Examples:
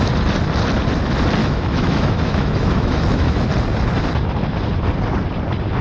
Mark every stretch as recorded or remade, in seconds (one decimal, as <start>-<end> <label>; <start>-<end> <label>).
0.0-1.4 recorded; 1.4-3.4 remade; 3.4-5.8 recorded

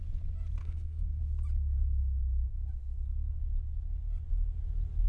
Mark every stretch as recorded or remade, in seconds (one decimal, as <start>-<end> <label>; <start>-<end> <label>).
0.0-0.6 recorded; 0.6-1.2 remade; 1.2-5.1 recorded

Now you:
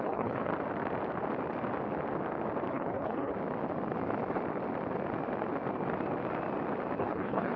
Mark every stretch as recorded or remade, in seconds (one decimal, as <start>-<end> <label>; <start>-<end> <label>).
0.0-0.5 remade; 0.5-2.7 recorded; 2.7-3.3 remade; 3.3-7.0 recorded; 7.0-7.6 remade

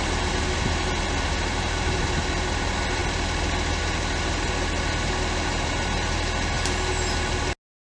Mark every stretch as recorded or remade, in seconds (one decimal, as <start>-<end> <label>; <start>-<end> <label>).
0.0-7.9 recorded

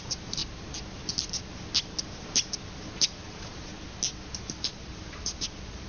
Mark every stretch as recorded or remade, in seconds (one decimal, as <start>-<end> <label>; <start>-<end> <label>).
0.0-0.4 remade; 0.4-3.0 recorded; 3.0-3.7 remade; 3.7-4.6 recorded; 4.6-5.9 remade

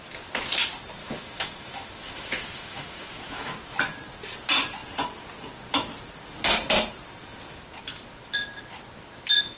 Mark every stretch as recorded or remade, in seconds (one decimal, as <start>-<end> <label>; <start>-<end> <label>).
0.0-1.0 recorded; 1.0-3.8 remade; 3.8-9.6 recorded